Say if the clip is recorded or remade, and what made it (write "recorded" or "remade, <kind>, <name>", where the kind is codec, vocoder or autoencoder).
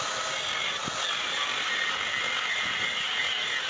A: recorded